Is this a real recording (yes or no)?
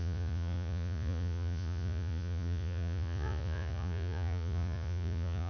no